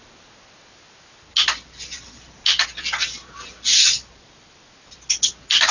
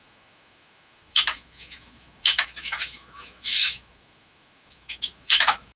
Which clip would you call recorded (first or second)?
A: first